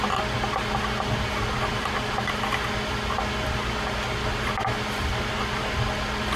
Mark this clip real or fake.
real